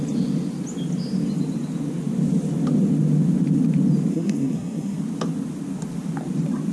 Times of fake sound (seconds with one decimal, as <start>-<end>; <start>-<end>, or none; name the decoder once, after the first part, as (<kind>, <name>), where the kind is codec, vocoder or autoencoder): 4.1-5.0 (codec, SNAC)